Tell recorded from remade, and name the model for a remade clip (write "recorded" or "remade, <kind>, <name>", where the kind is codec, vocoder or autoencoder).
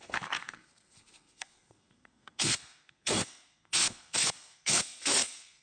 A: remade, codec, SNAC